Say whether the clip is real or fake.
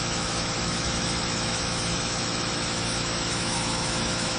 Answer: fake